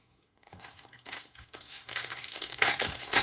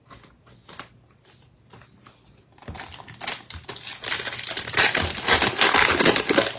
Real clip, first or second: second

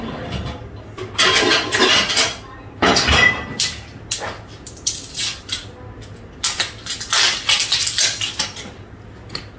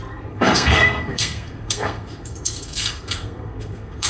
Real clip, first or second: first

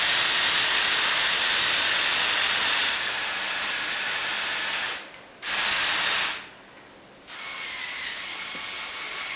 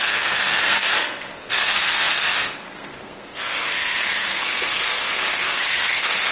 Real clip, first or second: first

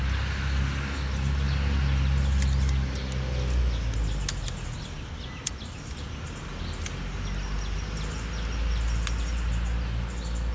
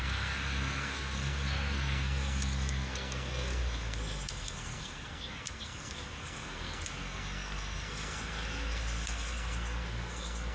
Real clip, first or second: first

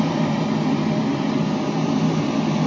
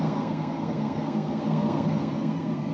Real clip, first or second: first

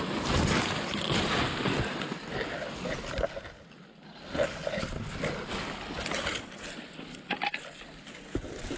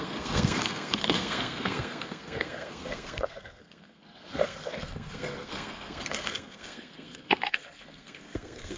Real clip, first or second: first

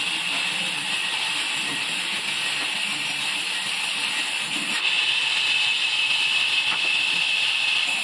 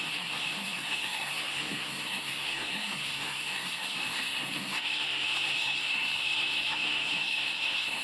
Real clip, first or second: first